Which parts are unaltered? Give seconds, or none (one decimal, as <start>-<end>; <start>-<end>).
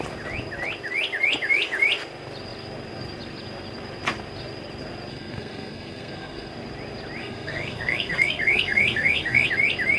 0.0-5.1; 6.5-7.2; 9.5-10.0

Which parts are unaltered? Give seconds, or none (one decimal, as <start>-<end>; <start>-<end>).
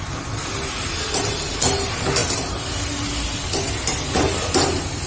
0.0-5.1